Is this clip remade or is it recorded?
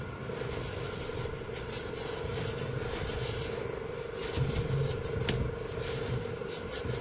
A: recorded